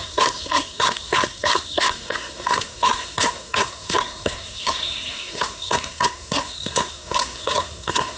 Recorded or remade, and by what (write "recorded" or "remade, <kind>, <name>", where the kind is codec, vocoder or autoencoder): remade, codec, SNAC